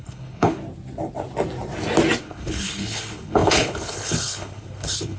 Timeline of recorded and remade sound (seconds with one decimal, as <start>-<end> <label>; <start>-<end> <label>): 0.0-0.6 remade; 0.6-2.2 recorded; 2.2-5.2 remade